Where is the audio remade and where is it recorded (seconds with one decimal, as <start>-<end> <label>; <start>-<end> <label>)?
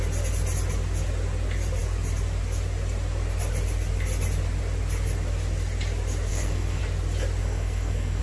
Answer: 0.0-6.3 recorded; 6.3-6.8 remade; 6.8-7.4 recorded; 7.4-8.2 remade